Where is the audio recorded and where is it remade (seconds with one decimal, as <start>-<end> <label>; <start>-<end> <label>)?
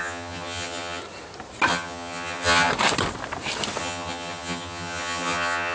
0.0-1.0 remade; 1.0-1.7 recorded; 1.7-2.7 remade; 2.7-3.8 recorded; 3.8-5.7 remade